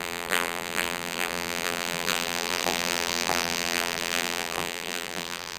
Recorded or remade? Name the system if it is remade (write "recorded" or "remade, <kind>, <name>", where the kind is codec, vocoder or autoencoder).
remade, vocoder, BigVGAN v2